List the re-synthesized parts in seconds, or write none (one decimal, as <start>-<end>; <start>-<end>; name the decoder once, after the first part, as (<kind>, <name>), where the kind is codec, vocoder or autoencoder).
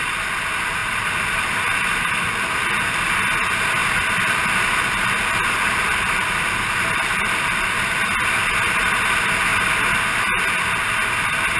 0.8-1.5 (vocoder, BigVGAN v2); 3.8-7.9